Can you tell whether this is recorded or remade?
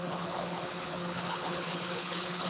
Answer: remade